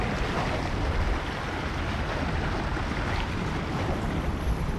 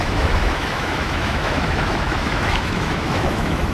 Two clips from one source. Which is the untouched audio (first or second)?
first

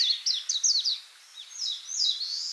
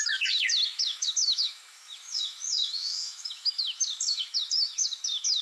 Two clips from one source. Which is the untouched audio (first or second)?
first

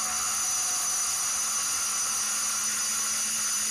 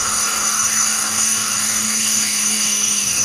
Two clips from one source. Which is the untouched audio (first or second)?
first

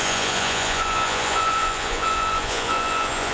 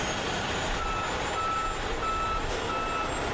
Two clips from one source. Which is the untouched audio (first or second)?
second